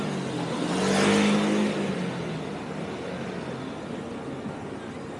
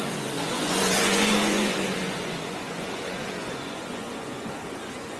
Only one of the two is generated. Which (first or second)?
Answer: second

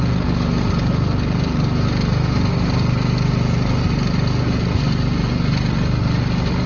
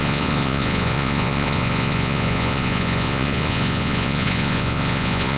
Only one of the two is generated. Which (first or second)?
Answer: second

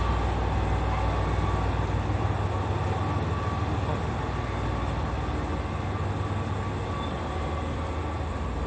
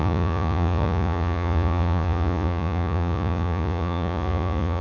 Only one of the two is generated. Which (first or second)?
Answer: second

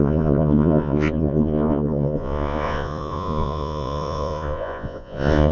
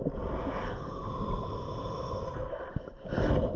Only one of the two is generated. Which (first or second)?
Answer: first